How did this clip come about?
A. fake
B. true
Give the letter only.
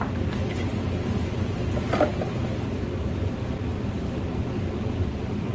B